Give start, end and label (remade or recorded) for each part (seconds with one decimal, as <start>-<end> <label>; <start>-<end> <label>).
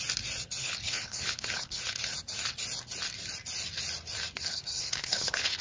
0.0-0.6 recorded; 0.6-1.8 remade; 1.8-4.4 recorded; 4.4-5.6 remade